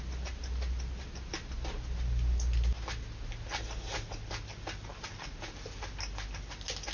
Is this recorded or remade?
recorded